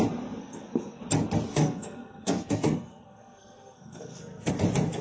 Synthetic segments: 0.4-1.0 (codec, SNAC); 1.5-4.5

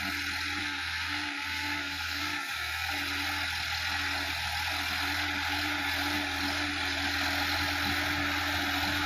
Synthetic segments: 0.6-2.9 (codec, SNAC)